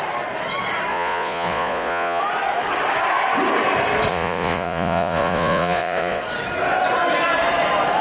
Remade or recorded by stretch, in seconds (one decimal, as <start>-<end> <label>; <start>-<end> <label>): 0.0-0.9 recorded; 0.9-2.2 remade; 2.2-4.1 recorded; 4.1-6.2 remade; 6.2-8.0 recorded